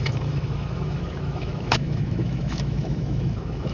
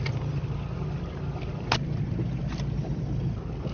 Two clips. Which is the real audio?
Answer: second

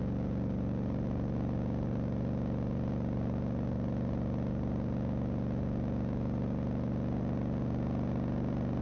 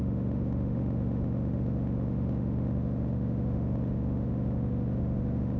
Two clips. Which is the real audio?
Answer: first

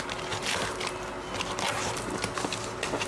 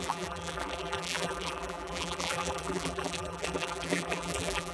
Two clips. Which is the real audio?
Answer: first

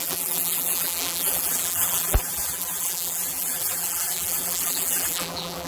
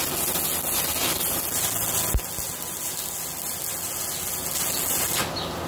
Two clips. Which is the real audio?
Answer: second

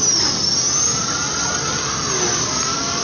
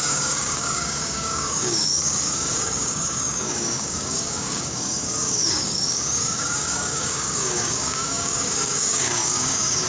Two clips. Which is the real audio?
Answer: first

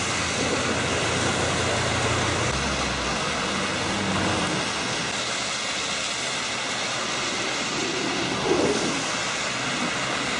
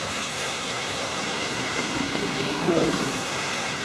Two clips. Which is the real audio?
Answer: first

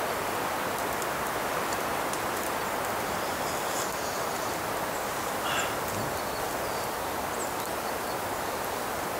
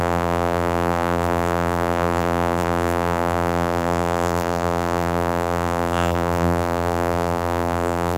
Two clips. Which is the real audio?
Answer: first